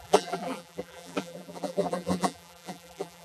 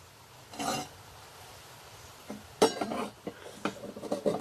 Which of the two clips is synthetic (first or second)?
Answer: first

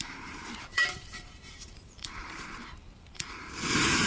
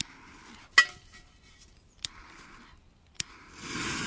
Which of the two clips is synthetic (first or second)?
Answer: first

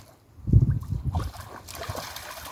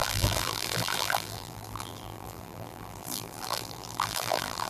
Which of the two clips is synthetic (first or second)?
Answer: second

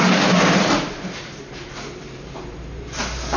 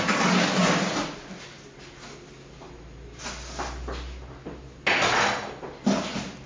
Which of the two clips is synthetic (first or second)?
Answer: first